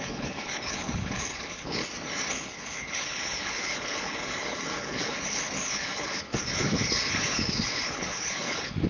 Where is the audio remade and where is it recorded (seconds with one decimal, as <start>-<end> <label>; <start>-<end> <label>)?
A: 0.0-1.8 remade; 1.8-2.3 recorded; 2.3-8.9 remade